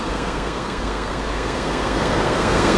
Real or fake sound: fake